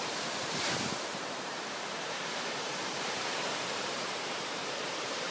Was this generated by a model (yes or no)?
yes